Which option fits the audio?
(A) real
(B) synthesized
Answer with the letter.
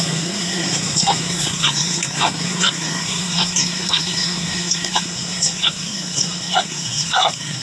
B